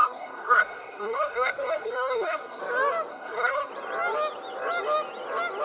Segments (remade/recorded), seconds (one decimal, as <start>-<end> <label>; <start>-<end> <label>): 0.0-2.6 remade; 2.6-3.1 recorded; 3.1-3.7 remade; 3.7-5.6 recorded